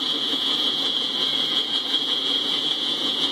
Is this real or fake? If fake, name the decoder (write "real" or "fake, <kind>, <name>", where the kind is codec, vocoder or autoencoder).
fake, vocoder, Vocos